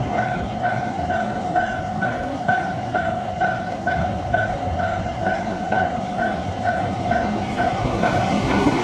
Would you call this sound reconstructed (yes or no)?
yes